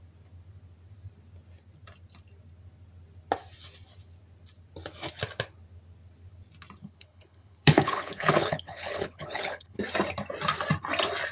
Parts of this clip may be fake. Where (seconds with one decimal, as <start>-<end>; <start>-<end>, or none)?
6.8-9.8